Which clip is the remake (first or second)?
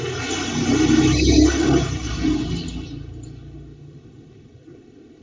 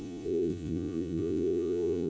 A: second